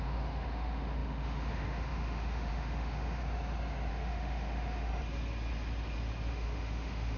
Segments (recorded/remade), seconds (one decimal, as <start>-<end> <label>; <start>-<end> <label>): 0.0-3.2 remade; 3.2-3.9 recorded; 3.9-4.9 remade; 4.9-6.3 recorded; 6.3-7.2 remade